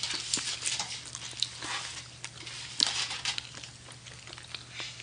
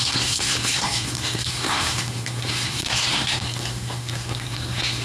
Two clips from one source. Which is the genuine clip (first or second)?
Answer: first